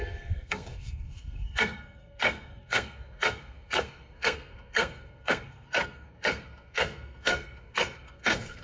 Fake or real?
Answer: fake